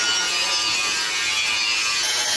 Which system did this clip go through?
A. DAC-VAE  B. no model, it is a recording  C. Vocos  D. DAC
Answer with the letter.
B